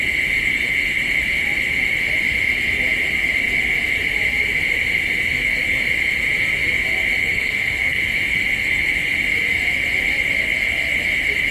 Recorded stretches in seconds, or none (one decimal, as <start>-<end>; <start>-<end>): 0.0-7.2; 8.0-11.5